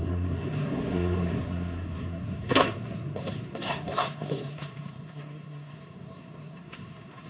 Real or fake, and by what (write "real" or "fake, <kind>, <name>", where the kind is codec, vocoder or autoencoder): fake, codec, SNAC